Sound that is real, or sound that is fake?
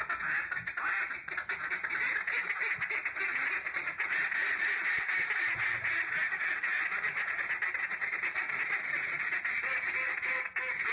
real